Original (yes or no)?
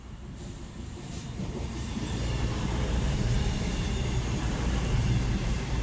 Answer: no